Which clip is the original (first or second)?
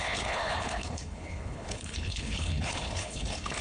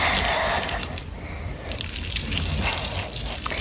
second